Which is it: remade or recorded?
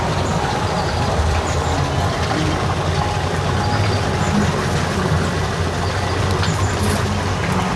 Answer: recorded